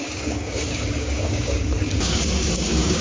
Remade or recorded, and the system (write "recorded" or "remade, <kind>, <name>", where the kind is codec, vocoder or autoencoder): remade, codec, DAC